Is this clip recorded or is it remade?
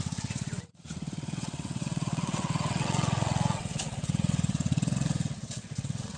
remade